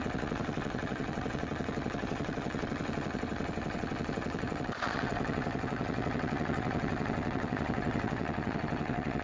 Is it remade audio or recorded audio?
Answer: remade